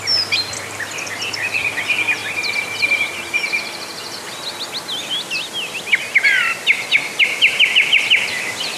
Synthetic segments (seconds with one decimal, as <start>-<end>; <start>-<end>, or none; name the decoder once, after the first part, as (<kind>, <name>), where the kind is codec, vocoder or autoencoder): 0.0-2.2 (vocoder, BigVGAN v2); 7.2-8.8